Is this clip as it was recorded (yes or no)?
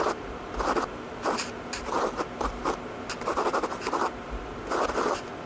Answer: yes